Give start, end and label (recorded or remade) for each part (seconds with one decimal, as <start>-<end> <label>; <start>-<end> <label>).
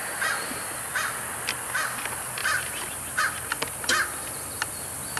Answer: 0.0-0.8 remade; 0.8-2.4 recorded; 2.4-3.2 remade; 3.2-5.2 recorded